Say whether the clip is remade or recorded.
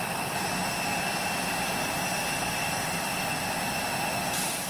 recorded